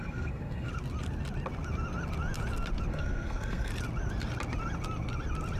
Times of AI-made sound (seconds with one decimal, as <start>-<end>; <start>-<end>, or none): 0.0-0.7; 2.9-3.7